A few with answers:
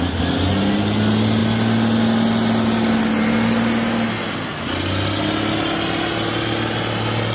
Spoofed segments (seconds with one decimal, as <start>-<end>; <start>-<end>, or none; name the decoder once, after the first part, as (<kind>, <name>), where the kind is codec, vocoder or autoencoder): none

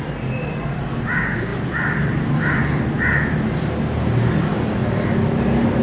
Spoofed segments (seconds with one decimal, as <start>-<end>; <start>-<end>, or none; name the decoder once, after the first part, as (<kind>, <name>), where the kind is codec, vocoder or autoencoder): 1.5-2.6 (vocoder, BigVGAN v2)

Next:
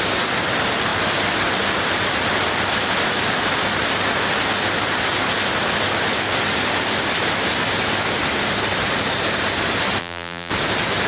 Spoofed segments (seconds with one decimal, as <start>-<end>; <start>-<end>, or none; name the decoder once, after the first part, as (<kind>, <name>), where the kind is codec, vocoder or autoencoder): 10.0-10.5 (vocoder, BigVGAN v2)

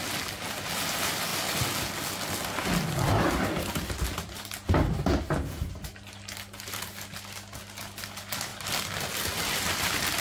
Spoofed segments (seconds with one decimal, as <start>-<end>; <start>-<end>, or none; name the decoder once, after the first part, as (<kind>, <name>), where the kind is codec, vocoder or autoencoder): 8.5-9.0 (vocoder, BigVGAN v2)

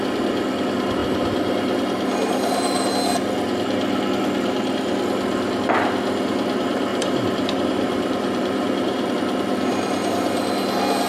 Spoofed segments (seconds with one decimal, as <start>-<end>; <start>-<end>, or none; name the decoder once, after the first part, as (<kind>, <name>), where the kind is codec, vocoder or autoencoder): 1.0-2.9 (vocoder, BigVGAN v2); 6.9-9.1; 9.7-10.4

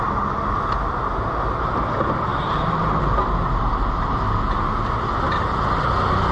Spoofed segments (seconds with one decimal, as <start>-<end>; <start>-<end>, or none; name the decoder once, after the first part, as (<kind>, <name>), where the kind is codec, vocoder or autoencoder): 2.3-3.0 (vocoder, BigVGAN v2)

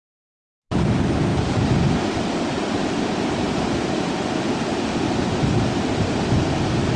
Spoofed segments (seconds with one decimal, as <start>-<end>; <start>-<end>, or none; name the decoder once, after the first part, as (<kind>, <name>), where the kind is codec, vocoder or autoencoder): none